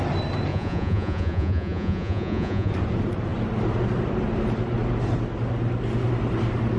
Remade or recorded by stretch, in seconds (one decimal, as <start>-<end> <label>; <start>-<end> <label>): 0.0-0.5 recorded; 0.5-2.7 remade; 2.7-6.8 recorded